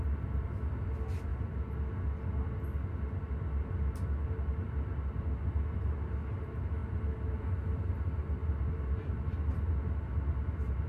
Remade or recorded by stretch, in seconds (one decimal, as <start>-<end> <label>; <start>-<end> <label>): 0.0-10.9 recorded